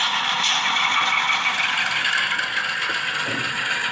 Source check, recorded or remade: recorded